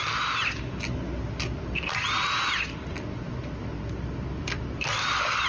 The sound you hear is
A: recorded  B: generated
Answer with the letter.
A